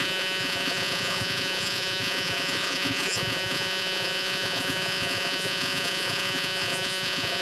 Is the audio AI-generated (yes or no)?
yes